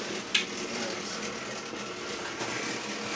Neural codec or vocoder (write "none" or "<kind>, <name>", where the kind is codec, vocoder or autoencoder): none